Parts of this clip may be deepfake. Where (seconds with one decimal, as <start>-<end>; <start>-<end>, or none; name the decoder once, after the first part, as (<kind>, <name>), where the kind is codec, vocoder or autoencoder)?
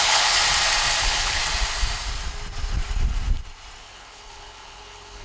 0.0-0.4 (codec, HILCodec); 1.0-1.4; 3.8-5.2